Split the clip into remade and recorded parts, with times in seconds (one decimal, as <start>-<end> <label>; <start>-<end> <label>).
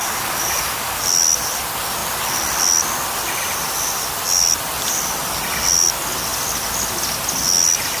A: 0.0-1.0 remade; 1.0-8.0 recorded